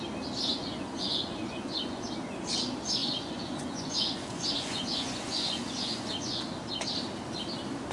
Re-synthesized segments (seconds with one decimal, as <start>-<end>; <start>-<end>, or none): 0.5-2.0; 3.0-6.4